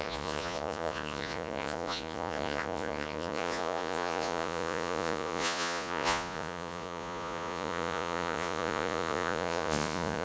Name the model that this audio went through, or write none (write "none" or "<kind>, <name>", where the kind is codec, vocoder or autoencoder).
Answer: vocoder, Vocos